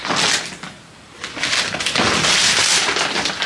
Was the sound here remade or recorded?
remade